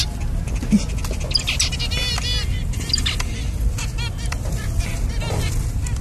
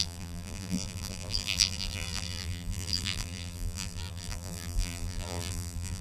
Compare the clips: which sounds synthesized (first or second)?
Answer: second